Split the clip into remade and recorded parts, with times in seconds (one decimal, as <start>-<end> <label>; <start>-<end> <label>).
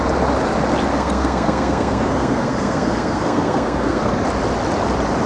0.0-0.9 recorded; 0.9-4.1 remade; 4.1-5.3 recorded